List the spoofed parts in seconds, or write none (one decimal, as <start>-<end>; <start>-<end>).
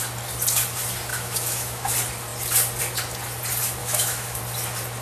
1.1-1.9; 3.8-4.4